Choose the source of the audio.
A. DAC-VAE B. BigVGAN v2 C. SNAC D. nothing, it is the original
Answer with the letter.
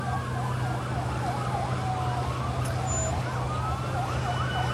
D